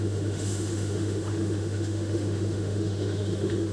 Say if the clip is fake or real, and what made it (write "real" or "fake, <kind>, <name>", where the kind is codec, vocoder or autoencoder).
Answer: fake, autoencoder, DAC-VAE